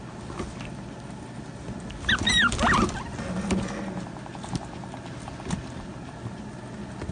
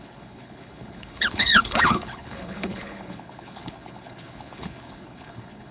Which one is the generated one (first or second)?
second